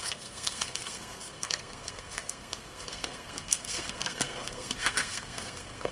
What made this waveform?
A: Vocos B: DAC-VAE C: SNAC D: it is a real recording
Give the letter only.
C